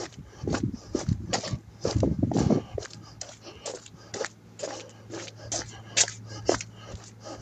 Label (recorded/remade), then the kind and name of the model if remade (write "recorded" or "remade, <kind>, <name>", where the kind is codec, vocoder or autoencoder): recorded